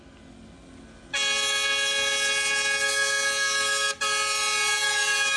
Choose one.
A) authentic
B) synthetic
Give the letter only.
A